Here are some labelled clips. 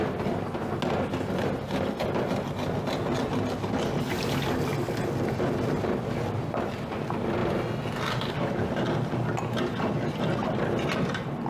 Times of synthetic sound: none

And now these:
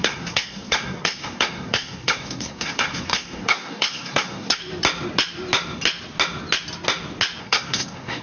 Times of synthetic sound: 0.0-4.6 (codec, SNAC); 7.4-8.2

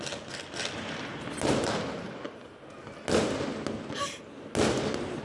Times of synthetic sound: none

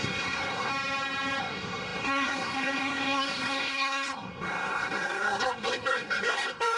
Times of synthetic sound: 0.0-0.7 (codec, SNAC); 1.4-6.8

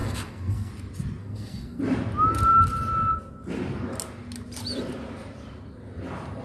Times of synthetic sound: 0.0-0.7 (codec, SNAC); 1.2-1.8

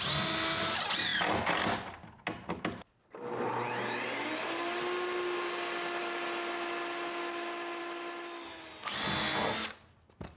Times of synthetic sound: none

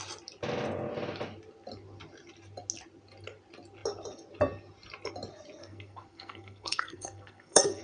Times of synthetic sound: 5.6-7.8 (codec, SNAC)

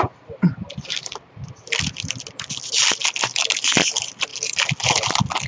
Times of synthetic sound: none